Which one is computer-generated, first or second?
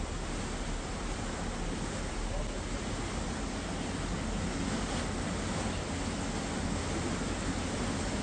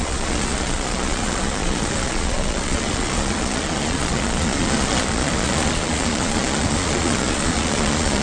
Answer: second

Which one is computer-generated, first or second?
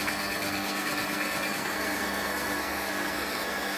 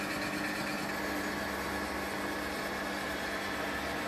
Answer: first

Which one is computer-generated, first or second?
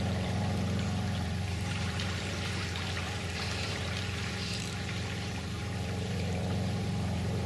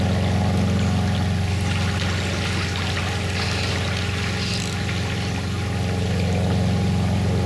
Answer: first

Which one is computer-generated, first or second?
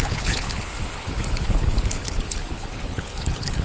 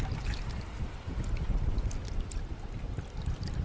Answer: first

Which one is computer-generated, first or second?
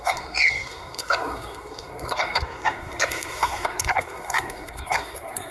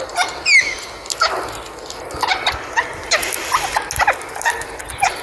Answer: first